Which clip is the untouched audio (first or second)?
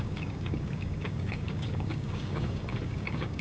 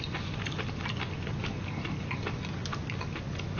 second